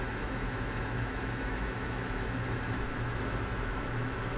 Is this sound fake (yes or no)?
yes